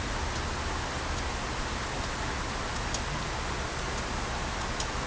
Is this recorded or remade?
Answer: recorded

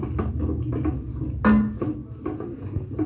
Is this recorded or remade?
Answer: recorded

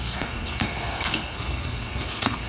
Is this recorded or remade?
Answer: remade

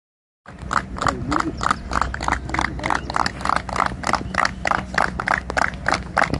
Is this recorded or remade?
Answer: recorded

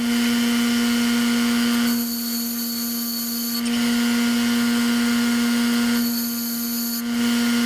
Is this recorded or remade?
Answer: recorded